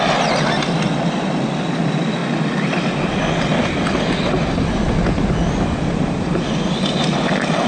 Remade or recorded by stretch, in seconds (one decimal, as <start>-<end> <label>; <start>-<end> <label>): 0.0-7.7 recorded